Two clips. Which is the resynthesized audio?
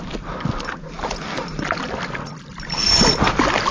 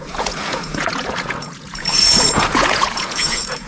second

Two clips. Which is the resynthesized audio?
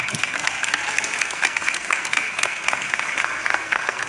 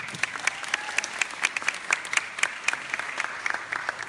first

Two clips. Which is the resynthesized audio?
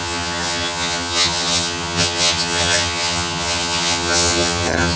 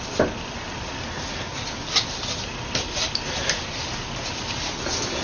first